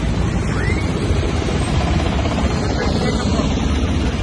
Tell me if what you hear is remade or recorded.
remade